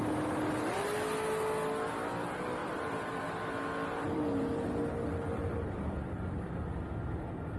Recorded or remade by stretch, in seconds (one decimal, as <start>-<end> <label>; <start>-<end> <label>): 0.0-7.6 recorded